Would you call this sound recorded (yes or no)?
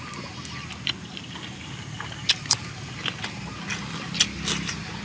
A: yes